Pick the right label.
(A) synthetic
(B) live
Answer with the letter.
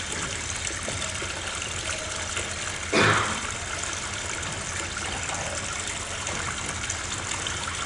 B